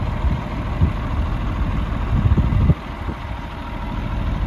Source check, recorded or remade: recorded